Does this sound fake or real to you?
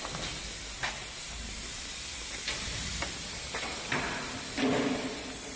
real